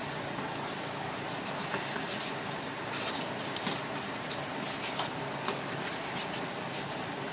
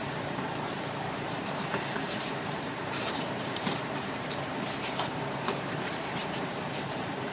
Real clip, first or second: first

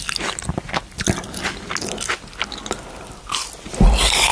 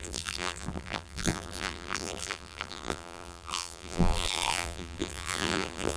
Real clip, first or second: first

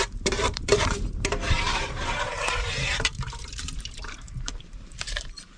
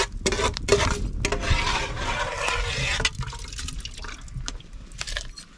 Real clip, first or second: second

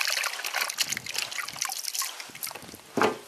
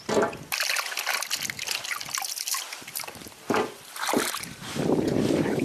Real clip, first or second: first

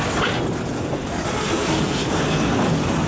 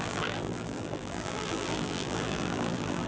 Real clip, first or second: first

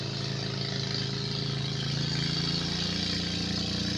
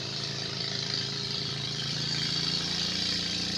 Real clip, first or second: first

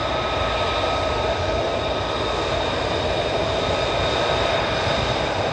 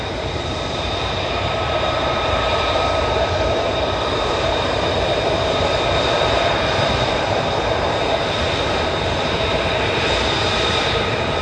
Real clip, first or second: first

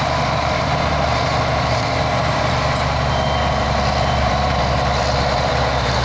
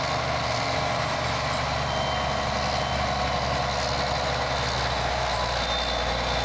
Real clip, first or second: second